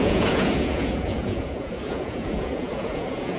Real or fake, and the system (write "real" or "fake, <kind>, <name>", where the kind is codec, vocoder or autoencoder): fake, vocoder, Vocos